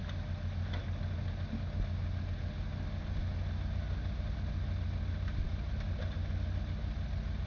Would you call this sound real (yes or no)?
yes